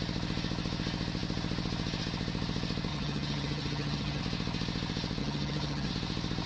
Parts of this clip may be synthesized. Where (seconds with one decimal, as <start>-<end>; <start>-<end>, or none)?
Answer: 2.9-4.2; 5.2-5.9